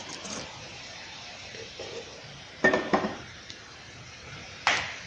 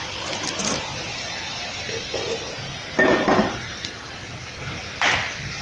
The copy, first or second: first